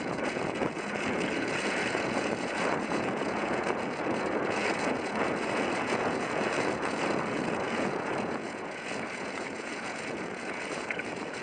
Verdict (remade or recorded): remade